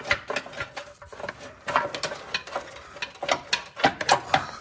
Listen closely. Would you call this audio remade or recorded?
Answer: recorded